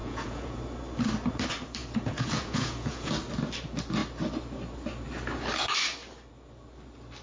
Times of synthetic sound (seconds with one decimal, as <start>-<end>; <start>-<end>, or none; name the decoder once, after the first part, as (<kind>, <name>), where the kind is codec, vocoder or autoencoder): 0.0-0.6 (vocoder, Vocos); 1.8-3.1